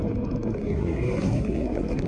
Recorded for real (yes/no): no